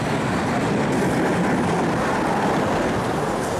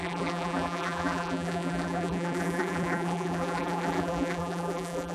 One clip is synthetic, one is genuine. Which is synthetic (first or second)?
second